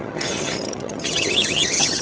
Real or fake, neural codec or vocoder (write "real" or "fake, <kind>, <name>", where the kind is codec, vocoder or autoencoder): fake, vocoder, HiFi-GAN